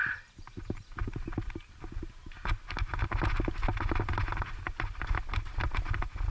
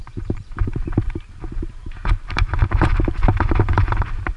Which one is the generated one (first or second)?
second